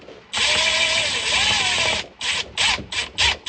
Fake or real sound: real